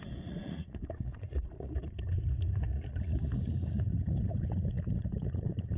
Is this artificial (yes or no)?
yes